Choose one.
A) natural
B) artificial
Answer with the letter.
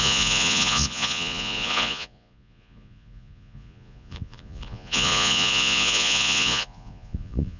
B